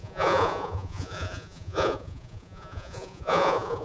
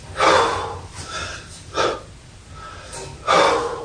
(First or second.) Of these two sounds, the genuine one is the second